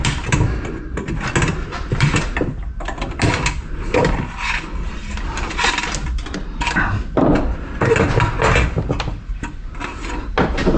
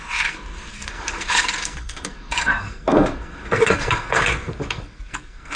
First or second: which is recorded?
first